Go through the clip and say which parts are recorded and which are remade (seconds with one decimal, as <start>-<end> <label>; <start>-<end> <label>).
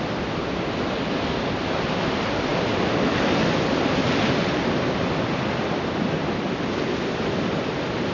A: 0.0-8.1 recorded